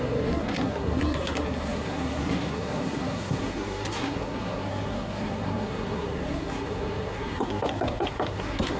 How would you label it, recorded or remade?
remade